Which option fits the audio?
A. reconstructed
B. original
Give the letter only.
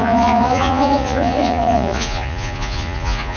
A